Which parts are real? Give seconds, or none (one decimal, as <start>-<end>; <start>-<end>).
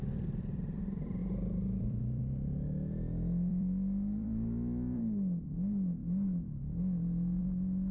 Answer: 0.0-1.2; 2.2-3.5; 5.0-7.9